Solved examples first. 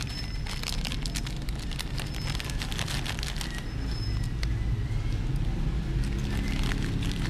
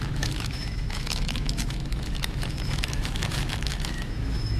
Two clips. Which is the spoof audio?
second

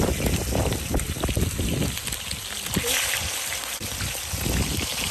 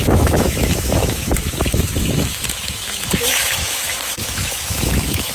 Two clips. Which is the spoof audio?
second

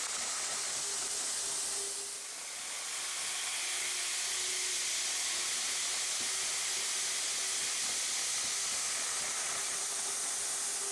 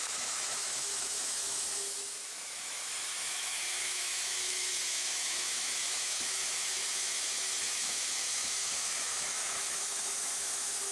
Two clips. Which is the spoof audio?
second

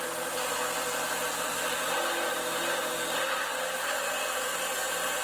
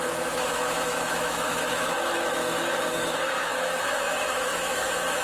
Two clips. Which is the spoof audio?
second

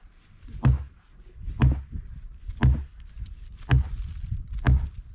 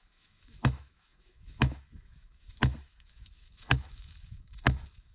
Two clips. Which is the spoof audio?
second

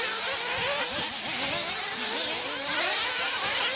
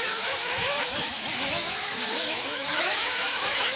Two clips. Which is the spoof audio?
second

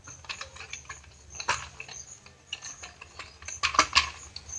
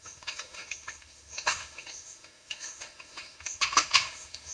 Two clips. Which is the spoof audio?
second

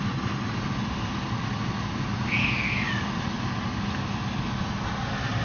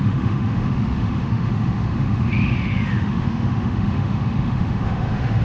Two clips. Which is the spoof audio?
second